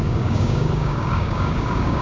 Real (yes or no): no